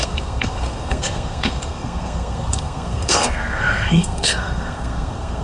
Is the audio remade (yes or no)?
yes